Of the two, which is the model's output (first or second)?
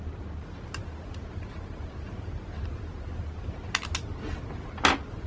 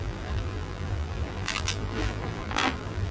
second